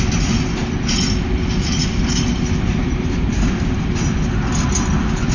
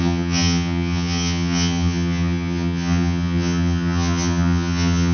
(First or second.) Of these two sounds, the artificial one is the second